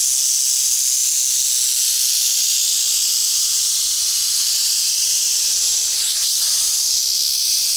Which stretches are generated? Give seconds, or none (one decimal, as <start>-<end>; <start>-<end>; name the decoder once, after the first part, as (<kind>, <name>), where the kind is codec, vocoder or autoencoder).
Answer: 3.2-6.9 (vocoder, BigVGAN v2)